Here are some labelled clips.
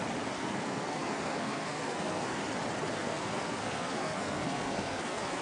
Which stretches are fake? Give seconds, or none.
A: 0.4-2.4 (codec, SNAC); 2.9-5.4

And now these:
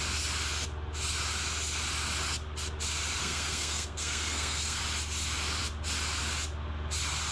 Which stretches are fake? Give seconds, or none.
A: 3.2-4.8 (codec, SNAC)

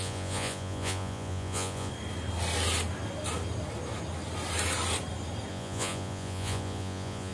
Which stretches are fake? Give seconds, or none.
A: 0.0-1.9 (vocoder, Vocos); 5.5-7.3

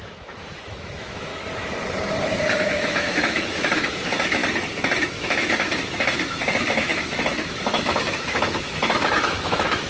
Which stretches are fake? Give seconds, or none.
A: 0.0-1.3 (autoencoder, DAC-VAE); 2.6-4.4; 5.0-9.9

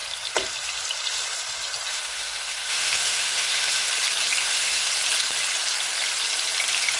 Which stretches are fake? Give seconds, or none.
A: 1.9-3.9 (autoencoder, DAC-VAE); 4.4-4.9